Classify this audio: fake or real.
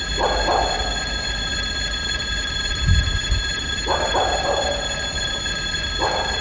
real